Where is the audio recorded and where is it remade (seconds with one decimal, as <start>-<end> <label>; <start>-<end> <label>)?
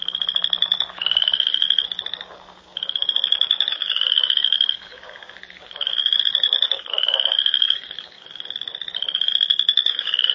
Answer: 0.0-8.7 remade; 8.7-9.7 recorded; 9.7-10.3 remade